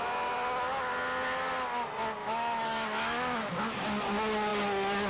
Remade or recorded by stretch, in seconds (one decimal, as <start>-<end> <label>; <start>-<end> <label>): 0.0-2.2 recorded; 2.2-3.6 remade; 3.6-5.1 recorded